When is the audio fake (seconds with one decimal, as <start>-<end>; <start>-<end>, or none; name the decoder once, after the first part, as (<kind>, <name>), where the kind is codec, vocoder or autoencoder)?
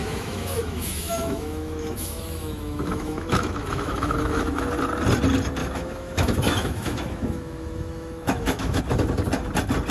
0.0-4.7 (autoencoder, DAC-VAE); 5.6-8.8